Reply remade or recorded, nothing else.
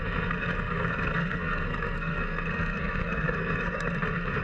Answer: remade